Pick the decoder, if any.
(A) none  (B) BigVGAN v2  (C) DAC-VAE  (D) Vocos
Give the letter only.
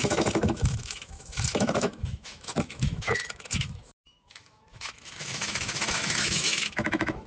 C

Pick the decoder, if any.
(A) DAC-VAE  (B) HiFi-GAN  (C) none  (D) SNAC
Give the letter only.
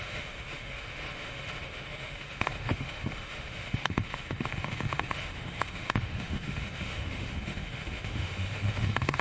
A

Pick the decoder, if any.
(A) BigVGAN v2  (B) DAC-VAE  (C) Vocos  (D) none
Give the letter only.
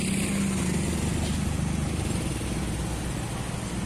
D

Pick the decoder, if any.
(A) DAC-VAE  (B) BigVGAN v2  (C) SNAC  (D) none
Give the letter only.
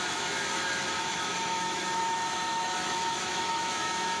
A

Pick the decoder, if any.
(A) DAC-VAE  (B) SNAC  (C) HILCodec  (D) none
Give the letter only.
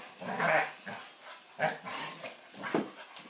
D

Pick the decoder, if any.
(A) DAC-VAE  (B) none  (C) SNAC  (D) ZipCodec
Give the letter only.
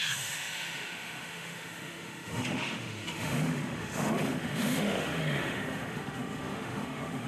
A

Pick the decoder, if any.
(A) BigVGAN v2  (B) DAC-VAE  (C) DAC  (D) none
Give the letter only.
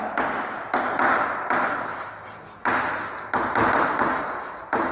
D